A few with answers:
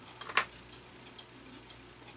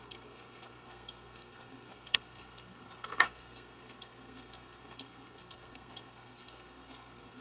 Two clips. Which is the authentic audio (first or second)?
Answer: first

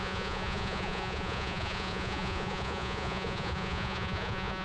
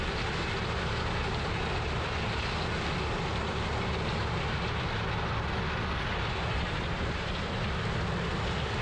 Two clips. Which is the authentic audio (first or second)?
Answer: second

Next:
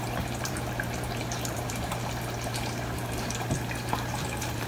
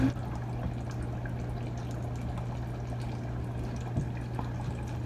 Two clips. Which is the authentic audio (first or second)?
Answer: second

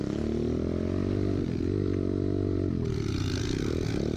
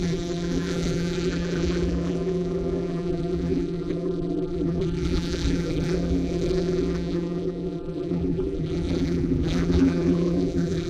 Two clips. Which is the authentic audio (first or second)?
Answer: first